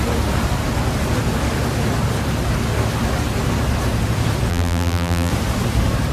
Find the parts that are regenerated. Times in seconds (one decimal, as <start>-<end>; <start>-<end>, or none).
4.5-5.3